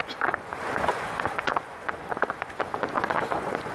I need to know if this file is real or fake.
fake